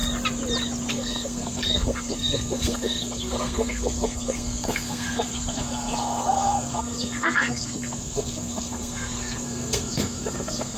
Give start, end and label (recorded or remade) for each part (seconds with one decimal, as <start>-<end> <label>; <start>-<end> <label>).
0.0-0.9 recorded; 0.9-10.8 remade